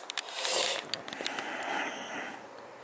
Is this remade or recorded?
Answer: recorded